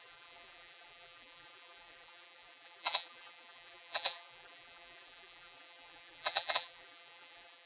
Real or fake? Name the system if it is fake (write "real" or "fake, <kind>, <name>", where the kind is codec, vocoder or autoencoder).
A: fake, vocoder, BigVGAN v2